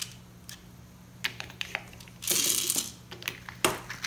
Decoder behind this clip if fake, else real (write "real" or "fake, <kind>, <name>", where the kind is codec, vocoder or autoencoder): real